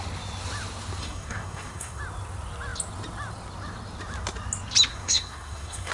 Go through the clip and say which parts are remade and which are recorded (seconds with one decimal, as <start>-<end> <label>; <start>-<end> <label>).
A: 0.0-1.0 recorded; 1.0-2.0 remade; 2.0-4.9 recorded; 4.9-5.9 remade